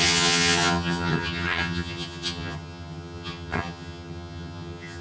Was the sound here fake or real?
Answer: fake